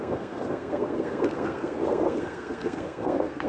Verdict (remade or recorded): remade